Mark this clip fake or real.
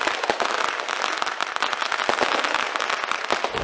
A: real